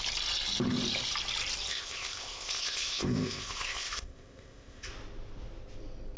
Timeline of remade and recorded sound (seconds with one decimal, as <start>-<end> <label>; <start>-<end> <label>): 0.0-1.7 recorded; 1.7-4.9 remade; 4.9-6.2 recorded